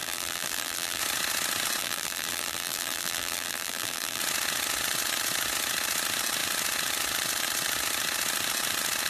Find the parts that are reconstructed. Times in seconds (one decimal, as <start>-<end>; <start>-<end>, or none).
0.0-1.0; 1.8-4.2